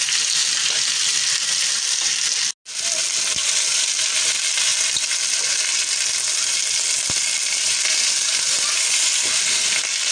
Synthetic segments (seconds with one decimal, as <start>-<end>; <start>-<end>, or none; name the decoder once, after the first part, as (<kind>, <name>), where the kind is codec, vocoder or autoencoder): none